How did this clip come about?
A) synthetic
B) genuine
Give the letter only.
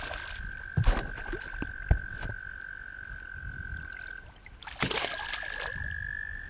B